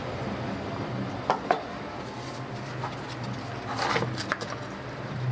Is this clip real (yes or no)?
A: yes